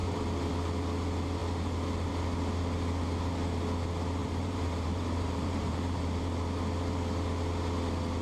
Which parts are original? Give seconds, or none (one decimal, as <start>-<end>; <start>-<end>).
0.5-4.2; 6.2-8.2